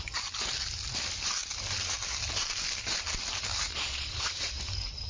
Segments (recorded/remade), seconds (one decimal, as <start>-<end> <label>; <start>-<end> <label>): 0.0-3.7 recorded; 3.7-4.4 remade; 4.4-5.1 recorded